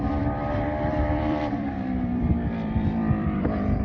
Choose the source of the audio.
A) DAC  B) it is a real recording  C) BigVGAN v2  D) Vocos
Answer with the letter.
C